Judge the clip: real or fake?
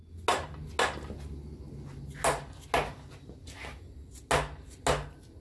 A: real